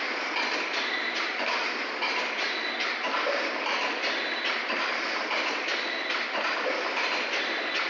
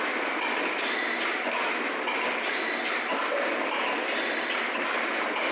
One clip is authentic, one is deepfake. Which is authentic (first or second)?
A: second